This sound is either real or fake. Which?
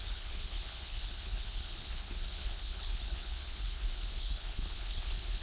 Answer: fake